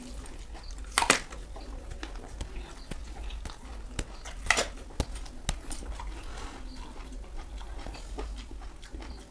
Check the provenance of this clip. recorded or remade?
recorded